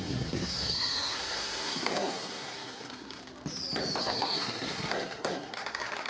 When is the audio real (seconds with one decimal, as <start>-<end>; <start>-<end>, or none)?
3.2-4.0